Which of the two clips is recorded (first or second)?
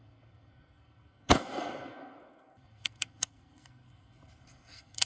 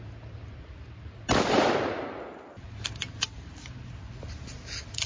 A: second